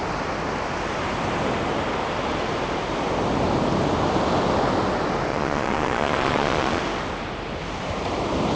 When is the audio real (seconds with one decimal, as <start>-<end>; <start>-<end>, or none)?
0.0-5.3; 6.8-8.6

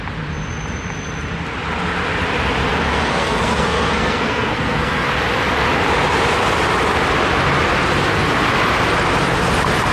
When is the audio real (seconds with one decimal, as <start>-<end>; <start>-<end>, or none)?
0.0-2.7; 5.1-9.9

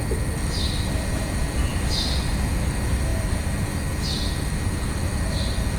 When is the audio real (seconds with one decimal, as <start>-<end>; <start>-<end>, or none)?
0.0-5.8

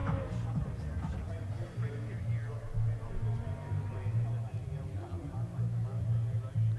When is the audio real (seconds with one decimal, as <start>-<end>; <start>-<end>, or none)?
0.0-6.8

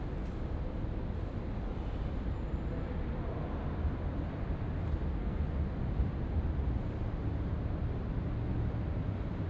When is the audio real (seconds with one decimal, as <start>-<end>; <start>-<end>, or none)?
0.0-5.1; 5.6-9.5

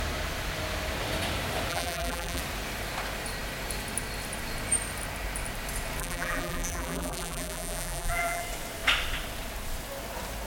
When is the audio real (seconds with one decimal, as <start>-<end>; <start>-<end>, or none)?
0.0-1.7; 2.4-6.0; 8.4-10.5

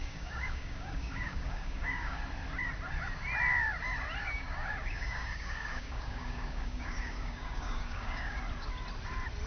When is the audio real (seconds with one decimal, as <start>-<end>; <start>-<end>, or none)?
2.2-4.2; 8.4-9.5

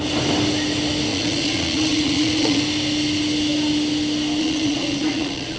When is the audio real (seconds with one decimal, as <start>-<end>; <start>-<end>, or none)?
0.0-1.1; 2.6-4.4